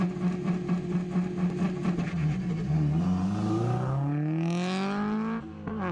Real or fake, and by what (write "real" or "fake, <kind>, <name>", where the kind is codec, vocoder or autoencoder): real